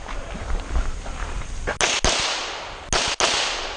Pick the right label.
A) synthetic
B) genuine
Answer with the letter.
B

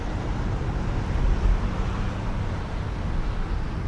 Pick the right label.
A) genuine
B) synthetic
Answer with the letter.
A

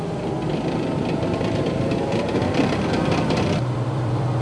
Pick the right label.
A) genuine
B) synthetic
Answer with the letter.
B